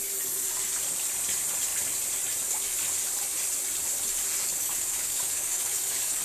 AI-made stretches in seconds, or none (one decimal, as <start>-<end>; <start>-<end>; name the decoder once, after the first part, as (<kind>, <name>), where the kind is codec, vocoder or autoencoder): 4.6-6.2 (codec, DAC)